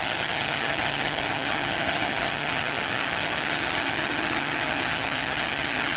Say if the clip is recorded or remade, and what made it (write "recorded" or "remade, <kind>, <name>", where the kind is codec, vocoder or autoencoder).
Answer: remade, vocoder, HiFi-GAN